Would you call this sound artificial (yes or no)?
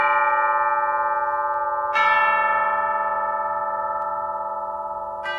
no